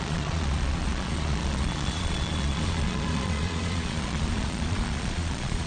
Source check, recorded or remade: remade